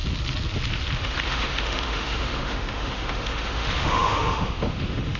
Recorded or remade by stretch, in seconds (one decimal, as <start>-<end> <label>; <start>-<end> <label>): 0.0-1.0 recorded; 1.0-5.2 remade